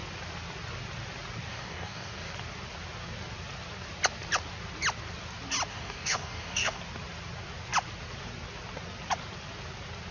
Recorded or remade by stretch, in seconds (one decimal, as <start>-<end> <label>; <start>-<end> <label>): 0.0-1.5 recorded; 1.5-2.3 remade; 2.3-5.7 recorded; 5.7-6.8 remade; 6.8-10.1 recorded